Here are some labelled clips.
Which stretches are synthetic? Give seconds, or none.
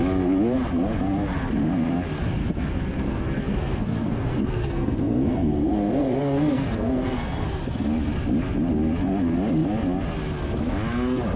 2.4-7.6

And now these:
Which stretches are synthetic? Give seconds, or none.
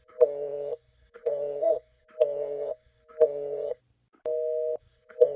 0.0-3.8; 4.8-5.4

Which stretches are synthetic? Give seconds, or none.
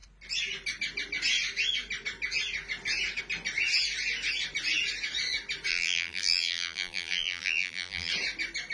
5.7-8.1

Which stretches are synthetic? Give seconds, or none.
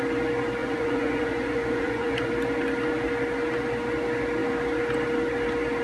0.6-2.3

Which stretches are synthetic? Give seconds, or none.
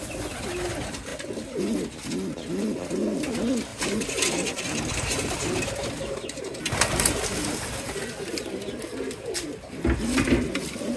3.7-5.4; 6.6-7.2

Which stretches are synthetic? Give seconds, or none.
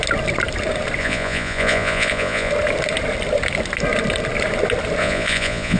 1.0-2.5; 5.0-5.8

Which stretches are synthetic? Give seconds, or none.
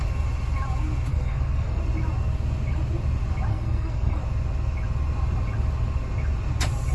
1.1-1.8; 3.5-4.2